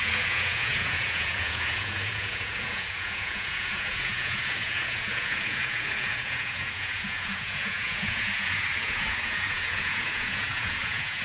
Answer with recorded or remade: remade